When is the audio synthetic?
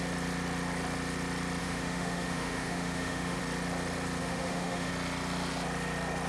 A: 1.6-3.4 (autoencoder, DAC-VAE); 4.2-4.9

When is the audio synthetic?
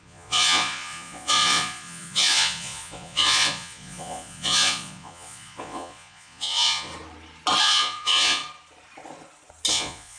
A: 0.0-6.9 (vocoder, Vocos); 7.6-8.4; 9.7-10.2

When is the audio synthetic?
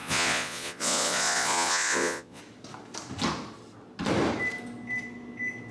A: 0.0-2.4 (vocoder, Vocos)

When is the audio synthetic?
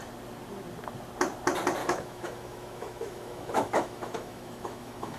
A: 1.8-5.2 (autoencoder, DAC-VAE)